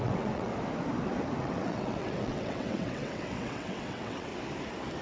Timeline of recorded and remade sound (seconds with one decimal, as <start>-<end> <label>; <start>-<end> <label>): 0.0-0.5 remade; 0.5-1.4 recorded; 1.4-4.3 remade; 4.3-5.0 recorded